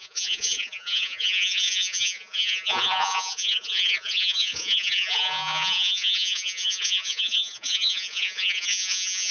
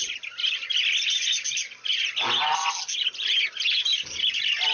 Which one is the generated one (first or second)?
first